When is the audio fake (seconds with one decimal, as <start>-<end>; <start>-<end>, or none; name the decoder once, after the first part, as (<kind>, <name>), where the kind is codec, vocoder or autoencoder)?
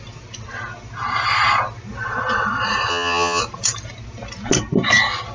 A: 2.9-3.4 (vocoder, HiFi-GAN)